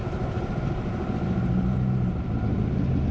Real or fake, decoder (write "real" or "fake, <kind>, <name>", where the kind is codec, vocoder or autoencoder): real